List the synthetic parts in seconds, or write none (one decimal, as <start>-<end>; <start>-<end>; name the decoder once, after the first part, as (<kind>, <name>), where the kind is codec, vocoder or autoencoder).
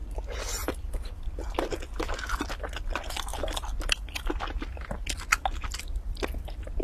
none